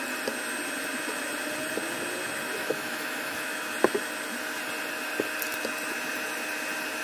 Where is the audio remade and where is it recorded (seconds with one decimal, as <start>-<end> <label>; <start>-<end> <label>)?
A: 0.0-2.6 recorded; 2.6-3.7 remade; 3.7-7.0 recorded